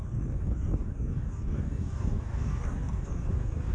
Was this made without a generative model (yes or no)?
no